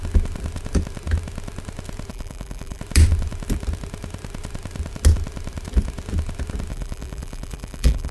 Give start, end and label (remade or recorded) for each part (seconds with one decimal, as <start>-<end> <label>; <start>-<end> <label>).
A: 0.0-2.1 recorded; 2.1-2.8 remade; 2.8-6.7 recorded; 6.7-8.1 remade